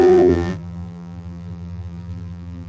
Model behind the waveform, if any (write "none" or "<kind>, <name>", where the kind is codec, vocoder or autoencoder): vocoder, BigVGAN v2